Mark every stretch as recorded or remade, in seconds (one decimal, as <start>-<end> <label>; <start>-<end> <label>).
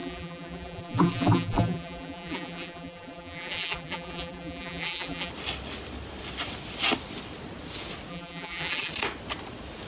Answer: 0.0-5.3 remade; 5.3-8.1 recorded; 8.1-8.9 remade; 8.9-9.9 recorded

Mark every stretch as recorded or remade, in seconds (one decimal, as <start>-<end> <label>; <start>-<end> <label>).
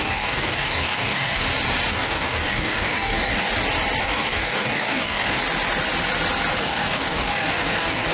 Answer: 0.0-1.4 remade; 1.4-1.9 recorded; 1.9-3.5 remade; 3.5-4.0 recorded; 4.0-5.4 remade; 5.4-6.6 recorded; 6.6-8.1 remade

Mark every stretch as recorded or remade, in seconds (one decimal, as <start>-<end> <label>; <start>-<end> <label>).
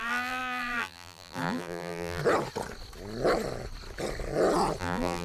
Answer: 0.0-2.2 remade; 2.2-4.8 recorded; 4.8-5.2 remade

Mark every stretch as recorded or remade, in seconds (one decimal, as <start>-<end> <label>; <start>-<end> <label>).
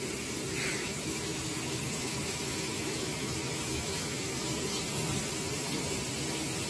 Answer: 0.0-0.7 recorded; 0.7-4.7 remade; 4.7-6.7 recorded